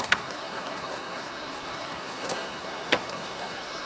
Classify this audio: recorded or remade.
remade